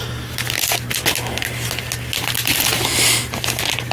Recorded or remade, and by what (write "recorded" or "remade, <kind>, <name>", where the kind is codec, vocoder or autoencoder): recorded